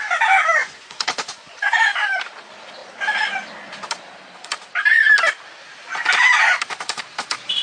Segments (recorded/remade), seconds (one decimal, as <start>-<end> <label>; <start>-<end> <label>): 0.0-0.6 recorded; 0.6-1.8 remade; 1.8-7.6 recorded